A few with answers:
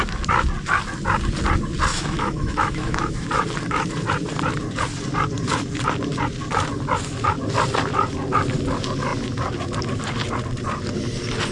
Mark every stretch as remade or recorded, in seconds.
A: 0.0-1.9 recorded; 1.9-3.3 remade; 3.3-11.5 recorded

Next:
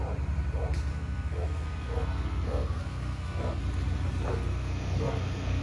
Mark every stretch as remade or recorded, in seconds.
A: 0.0-0.9 recorded; 0.9-3.6 remade; 3.6-4.3 recorded; 4.3-5.6 remade

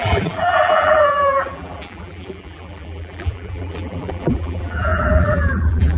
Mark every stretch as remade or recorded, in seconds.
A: 0.0-6.0 remade

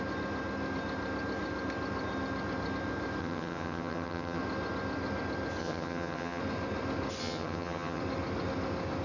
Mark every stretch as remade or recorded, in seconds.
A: 0.0-3.2 recorded; 3.2-4.4 remade; 4.4-5.6 recorded; 5.6-6.4 remade; 6.4-7.2 recorded; 7.2-8.0 remade; 8.0-9.0 recorded

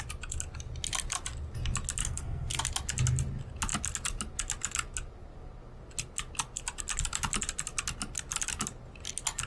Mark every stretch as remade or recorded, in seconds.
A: 0.0-2.0 recorded; 2.0-2.6 remade; 2.6-9.5 recorded

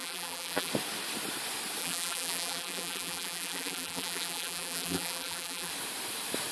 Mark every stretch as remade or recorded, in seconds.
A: 0.0-0.7 remade; 0.7-1.8 recorded; 1.8-5.7 remade; 5.7-6.5 recorded

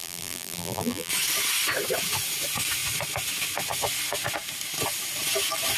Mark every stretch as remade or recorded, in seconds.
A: 0.0-1.1 remade; 1.1-5.8 recorded